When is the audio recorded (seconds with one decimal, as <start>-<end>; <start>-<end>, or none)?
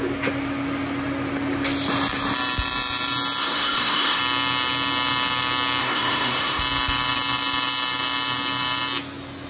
0.0-3.4; 4.2-5.8; 6.6-9.5